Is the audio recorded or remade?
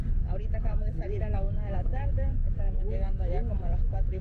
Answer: remade